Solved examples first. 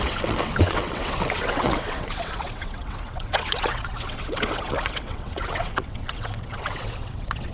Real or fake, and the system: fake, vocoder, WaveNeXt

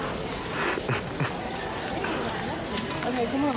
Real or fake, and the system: real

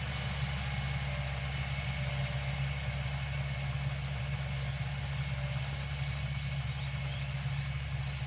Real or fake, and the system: real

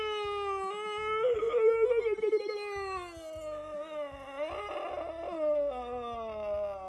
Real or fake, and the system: real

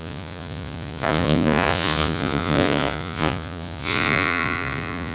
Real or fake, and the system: fake, vocoder, Vocos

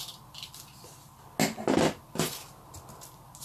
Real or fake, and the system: real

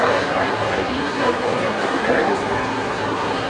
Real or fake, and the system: fake, codec, SNAC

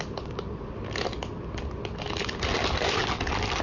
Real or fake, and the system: real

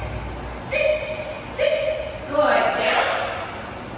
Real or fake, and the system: real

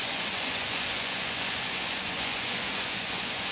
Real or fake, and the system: fake, vocoder, Vocos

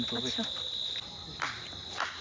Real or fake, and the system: real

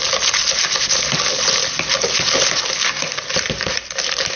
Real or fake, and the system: real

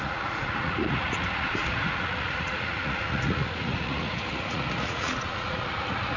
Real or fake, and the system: fake, vocoder, Vocos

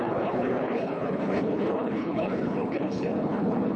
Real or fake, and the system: fake, codec, HILCodec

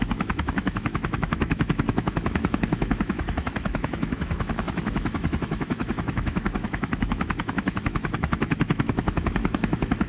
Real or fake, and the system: fake, autoencoder, DAC-VAE